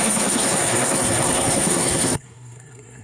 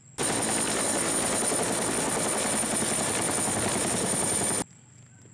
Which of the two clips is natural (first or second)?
second